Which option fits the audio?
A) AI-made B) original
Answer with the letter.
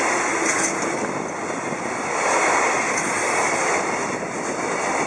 B